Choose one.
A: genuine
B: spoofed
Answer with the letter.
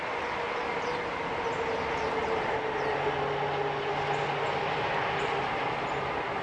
A